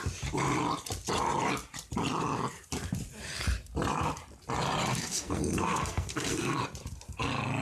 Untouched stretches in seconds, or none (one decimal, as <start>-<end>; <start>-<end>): 0.0-4.9; 6.6-7.6